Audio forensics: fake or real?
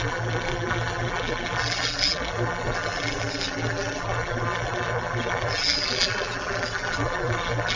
fake